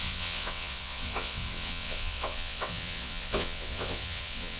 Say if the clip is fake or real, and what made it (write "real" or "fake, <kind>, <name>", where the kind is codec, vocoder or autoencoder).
fake, vocoder, WaveNeXt